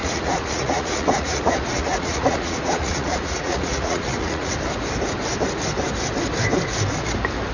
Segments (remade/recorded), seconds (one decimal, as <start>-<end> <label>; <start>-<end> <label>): 0.0-4.5 remade; 4.5-7.5 recorded

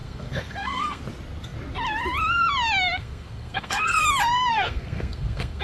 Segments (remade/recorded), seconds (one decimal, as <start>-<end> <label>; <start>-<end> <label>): 0.0-1.0 remade; 1.0-3.0 recorded; 3.0-4.0 remade; 4.0-4.5 recorded; 4.5-5.6 remade